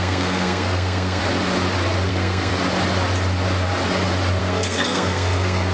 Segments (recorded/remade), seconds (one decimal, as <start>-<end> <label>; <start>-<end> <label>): 0.0-1.2 remade; 1.2-2.1 recorded; 2.1-2.5 remade; 2.5-4.4 recorded; 4.4-5.7 remade